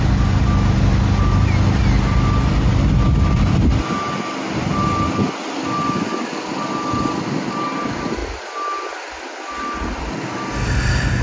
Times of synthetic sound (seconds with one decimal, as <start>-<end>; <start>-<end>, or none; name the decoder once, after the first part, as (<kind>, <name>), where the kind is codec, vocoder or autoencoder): none